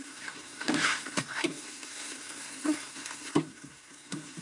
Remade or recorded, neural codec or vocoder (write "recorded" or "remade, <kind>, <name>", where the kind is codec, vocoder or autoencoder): remade, codec, SNAC